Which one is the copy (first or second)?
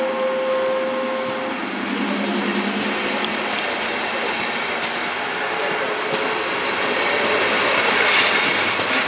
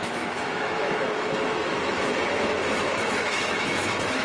second